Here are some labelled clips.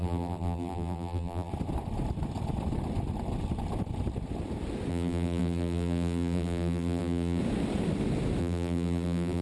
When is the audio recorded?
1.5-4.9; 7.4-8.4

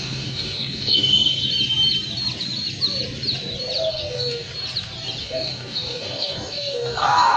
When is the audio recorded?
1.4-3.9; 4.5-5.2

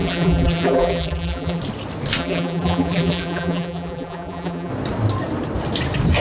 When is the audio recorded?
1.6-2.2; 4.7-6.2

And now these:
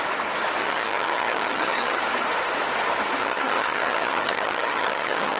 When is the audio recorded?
0.0-0.6; 2.0-3.2

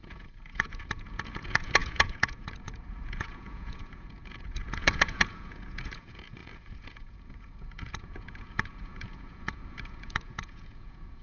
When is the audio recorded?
none

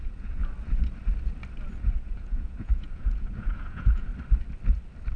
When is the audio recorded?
0.4-1.8; 4.1-5.2

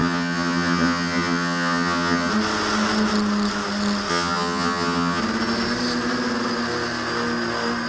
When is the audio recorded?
2.3-4.1; 5.2-7.9